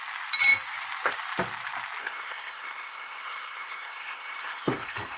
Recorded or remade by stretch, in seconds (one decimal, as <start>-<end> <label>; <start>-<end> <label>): 0.0-2.0 recorded; 2.0-5.2 remade